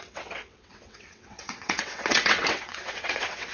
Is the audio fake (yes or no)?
yes